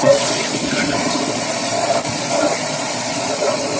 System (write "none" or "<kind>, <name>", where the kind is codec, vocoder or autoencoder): vocoder, Vocos